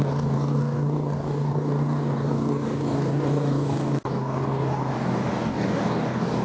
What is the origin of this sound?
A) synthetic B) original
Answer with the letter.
A